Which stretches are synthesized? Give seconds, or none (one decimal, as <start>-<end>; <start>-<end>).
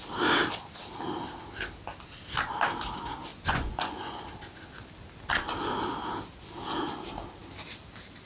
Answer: 3.3-4.2